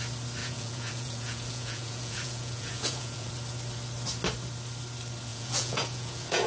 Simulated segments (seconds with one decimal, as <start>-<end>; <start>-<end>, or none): 0.4-3.3; 5.3-6.5